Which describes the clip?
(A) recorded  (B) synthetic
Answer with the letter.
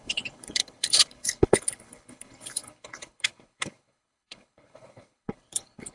B